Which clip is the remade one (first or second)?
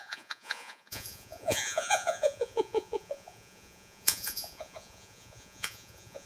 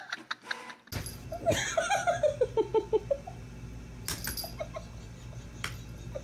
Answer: first